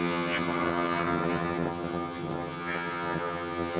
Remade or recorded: remade